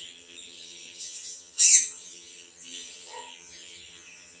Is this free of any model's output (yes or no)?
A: no